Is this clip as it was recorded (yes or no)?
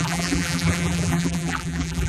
no